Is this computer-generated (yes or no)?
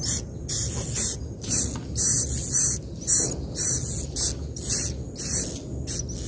no